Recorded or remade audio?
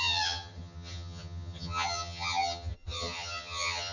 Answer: remade